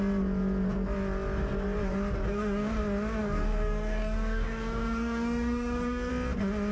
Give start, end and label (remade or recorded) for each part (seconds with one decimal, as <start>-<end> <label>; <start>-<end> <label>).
0.0-2.3 recorded; 2.3-2.8 remade; 2.8-3.2 recorded; 3.2-6.1 remade; 6.1-6.7 recorded